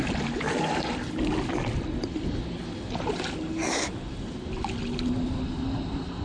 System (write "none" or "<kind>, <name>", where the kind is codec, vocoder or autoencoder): none